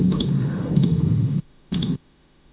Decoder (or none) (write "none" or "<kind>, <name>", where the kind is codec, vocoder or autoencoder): autoencoder, DAC-VAE